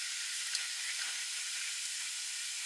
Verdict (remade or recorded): recorded